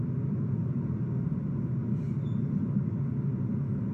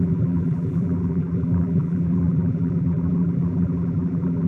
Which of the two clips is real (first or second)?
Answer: first